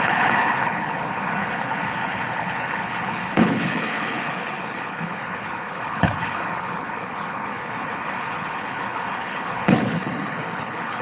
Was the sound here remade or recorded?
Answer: remade